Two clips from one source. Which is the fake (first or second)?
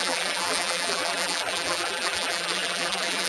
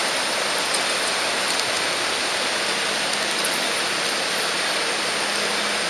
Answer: first